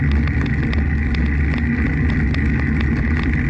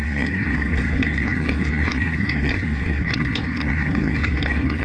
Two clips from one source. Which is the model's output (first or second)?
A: second